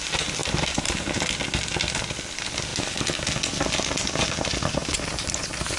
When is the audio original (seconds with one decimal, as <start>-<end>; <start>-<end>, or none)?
0.0-0.4; 1.3-4.8